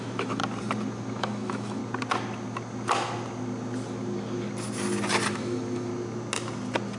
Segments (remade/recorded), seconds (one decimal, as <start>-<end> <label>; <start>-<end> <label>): 0.0-0.4 remade; 0.4-1.2 recorded; 1.2-1.8 remade; 1.8-5.3 recorded; 5.3-5.9 remade; 5.9-7.0 recorded